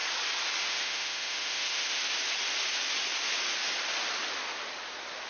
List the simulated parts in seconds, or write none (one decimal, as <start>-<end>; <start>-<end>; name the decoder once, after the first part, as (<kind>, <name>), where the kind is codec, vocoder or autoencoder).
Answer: 0.6-2.0 (autoencoder, DAC-VAE)